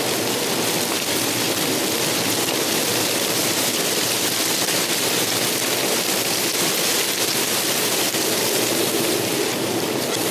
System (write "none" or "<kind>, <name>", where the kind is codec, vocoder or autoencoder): none